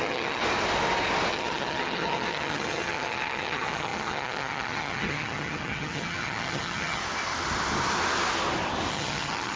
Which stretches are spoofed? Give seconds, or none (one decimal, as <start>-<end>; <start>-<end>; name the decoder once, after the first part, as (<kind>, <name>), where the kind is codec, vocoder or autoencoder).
0.0-0.4 (vocoder, HiFi-GAN); 1.3-7.0; 8.9-9.6